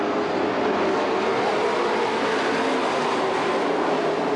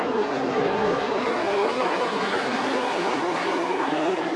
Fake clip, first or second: second